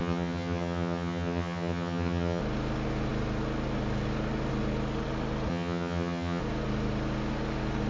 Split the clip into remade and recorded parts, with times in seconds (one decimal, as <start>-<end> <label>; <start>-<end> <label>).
0.0-2.4 remade; 2.4-5.5 recorded; 5.5-6.4 remade; 6.4-7.9 recorded